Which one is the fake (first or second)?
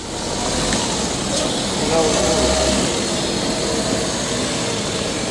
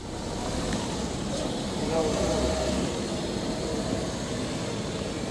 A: second